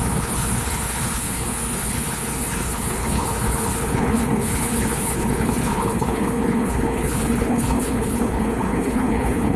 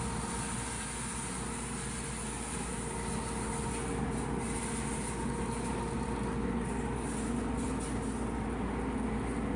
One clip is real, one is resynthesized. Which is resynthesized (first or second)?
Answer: first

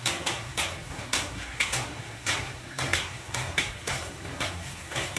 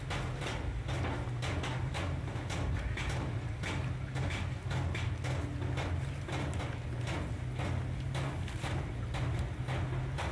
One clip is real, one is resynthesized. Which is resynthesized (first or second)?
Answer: first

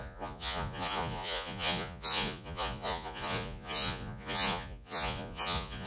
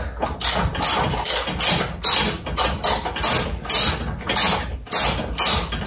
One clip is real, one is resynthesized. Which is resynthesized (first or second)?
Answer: first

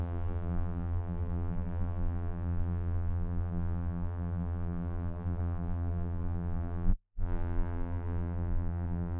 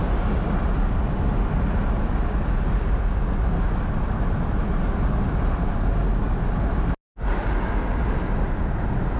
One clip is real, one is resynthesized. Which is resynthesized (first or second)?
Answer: first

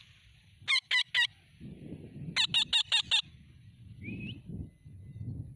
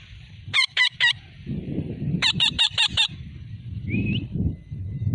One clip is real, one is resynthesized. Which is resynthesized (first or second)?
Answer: second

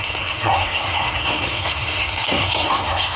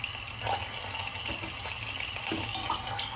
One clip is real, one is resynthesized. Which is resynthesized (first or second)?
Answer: first